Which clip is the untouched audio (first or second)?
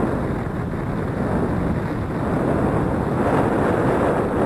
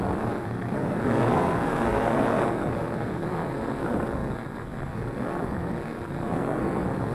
first